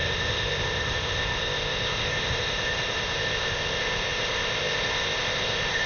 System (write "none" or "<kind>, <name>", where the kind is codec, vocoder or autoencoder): codec, ZipCodec